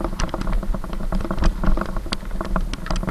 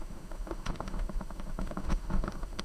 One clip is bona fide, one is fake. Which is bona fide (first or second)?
first